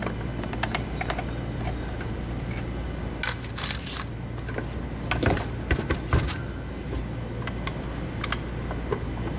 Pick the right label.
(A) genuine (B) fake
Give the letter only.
A